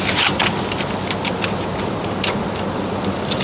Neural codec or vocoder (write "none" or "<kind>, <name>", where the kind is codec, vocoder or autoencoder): none